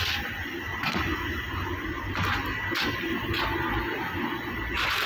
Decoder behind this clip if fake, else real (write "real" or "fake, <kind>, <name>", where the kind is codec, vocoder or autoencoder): real